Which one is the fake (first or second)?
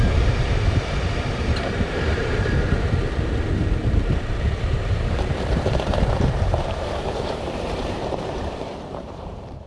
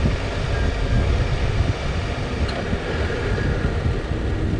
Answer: first